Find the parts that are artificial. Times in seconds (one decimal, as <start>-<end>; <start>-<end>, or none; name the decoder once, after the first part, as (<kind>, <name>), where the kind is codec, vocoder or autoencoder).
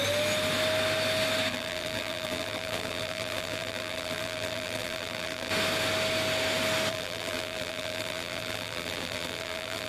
1.5-5.5 (vocoder, BigVGAN v2); 6.9-9.9